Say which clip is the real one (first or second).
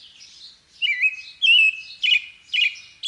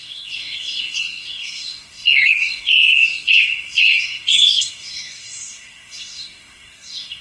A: first